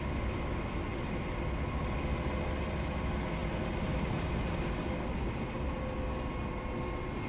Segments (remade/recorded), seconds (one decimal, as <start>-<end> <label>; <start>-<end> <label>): 0.0-7.3 recorded